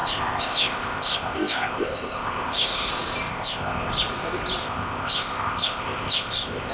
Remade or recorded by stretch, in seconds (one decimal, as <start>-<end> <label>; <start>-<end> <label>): 0.0-2.9 remade; 2.9-3.3 recorded; 3.3-3.9 remade; 3.9-4.6 recorded; 4.6-6.7 remade